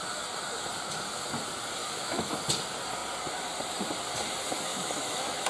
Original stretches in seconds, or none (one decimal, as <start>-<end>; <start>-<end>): 0.0-1.8; 2.3-4.7